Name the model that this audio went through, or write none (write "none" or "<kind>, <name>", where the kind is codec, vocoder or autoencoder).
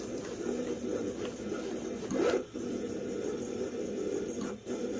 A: none